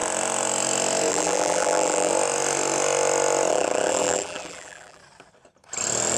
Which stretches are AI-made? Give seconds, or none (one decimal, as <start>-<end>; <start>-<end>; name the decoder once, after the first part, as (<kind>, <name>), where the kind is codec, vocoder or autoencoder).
1.1-2.1 (vocoder, BigVGAN v2); 3.5-5.0